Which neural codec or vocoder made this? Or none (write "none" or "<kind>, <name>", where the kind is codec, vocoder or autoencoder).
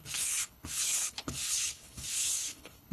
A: codec, HILCodec